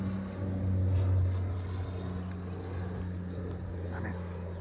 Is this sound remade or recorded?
recorded